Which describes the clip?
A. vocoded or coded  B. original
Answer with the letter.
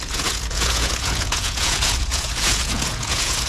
A